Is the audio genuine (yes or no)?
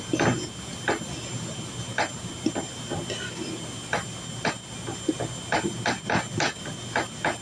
yes